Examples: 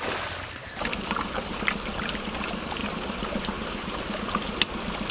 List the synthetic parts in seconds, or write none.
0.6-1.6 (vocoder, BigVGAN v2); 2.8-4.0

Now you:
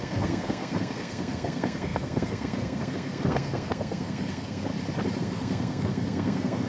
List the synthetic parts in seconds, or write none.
0.0-4.7 (codec, SNAC); 5.2-6.7

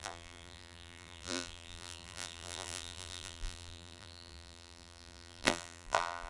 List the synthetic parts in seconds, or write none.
0.0-6.3 (vocoder, BigVGAN v2)

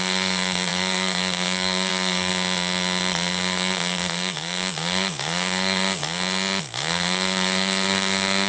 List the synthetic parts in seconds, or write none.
0.0-2.3 (codec, DAC); 3.3-6.0; 6.6-8.5

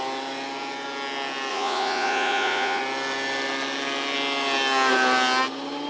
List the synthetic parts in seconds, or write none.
1.5-2.8 (vocoder, Vocos)

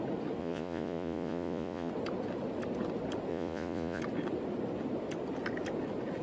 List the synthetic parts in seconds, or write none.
0.4-1.9 (vocoder, Vocos); 3.3-4.0

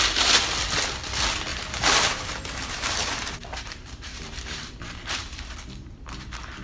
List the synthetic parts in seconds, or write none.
1.5-5.5 (vocoder, BigVGAN v2)

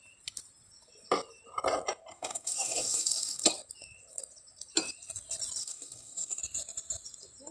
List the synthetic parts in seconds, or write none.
2.1-3.5 (codec, DAC); 5.6-6.4